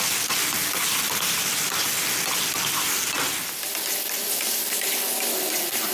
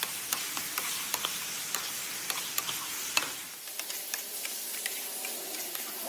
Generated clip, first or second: second